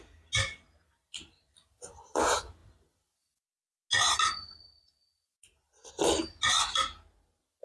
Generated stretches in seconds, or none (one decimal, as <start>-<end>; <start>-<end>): none